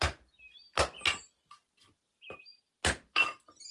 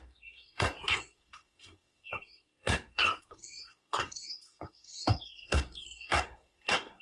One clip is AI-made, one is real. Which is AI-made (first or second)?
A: second